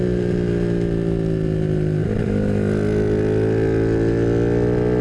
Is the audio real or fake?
real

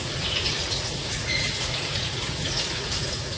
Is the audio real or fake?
fake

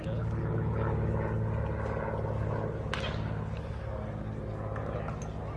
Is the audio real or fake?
real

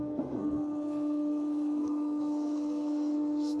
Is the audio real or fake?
fake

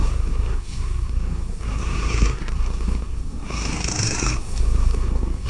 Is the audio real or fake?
fake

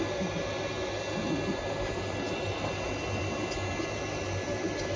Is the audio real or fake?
real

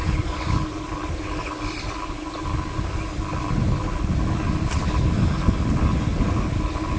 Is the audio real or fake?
real